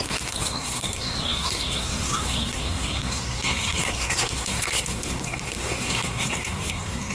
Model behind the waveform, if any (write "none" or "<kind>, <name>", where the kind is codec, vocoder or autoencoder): codec, SNAC